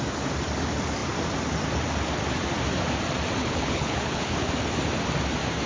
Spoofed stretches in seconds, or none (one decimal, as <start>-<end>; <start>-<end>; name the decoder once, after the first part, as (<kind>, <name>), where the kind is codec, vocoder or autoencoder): 3.4-4.5 (codec, HILCodec)